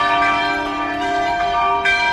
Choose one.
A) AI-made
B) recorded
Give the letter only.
A